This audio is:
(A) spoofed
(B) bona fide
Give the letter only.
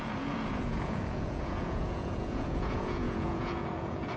A